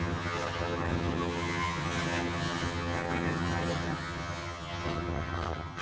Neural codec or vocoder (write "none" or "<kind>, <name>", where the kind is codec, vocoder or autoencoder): vocoder, HiFi-GAN